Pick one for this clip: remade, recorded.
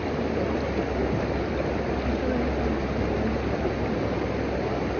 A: recorded